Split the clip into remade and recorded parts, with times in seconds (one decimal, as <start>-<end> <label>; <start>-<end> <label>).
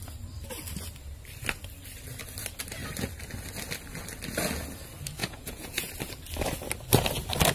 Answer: 0.0-5.2 recorded; 5.2-5.9 remade; 5.9-7.5 recorded